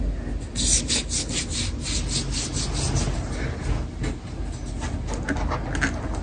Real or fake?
real